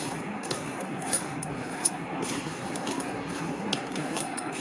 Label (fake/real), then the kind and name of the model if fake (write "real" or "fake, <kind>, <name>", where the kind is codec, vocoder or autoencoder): fake, codec, SNAC